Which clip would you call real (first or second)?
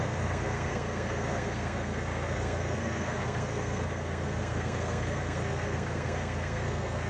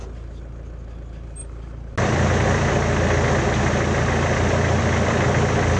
second